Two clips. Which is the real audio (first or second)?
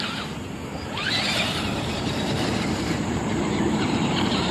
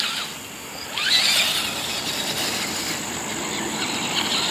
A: second